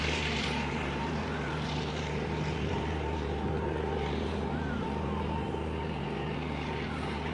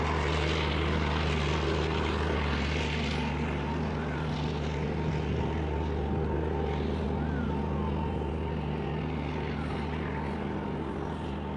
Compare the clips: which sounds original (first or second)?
second